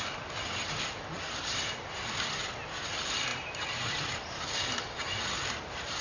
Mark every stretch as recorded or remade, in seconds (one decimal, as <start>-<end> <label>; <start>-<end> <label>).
0.0-6.0 recorded